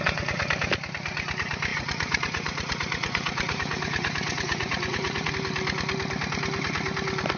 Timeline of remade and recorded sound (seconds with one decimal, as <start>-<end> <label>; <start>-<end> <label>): 0.0-0.5 remade; 0.5-1.7 recorded; 1.7-5.3 remade; 5.3-7.4 recorded